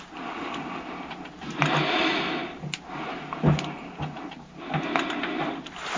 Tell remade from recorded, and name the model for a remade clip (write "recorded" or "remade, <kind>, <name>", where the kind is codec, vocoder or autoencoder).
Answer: recorded